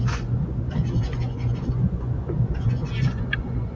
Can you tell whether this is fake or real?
fake